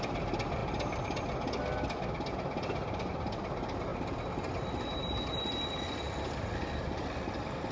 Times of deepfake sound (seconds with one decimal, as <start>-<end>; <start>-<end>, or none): none

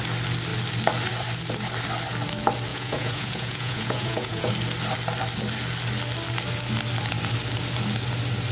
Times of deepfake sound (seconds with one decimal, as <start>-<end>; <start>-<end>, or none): 2.7-4.5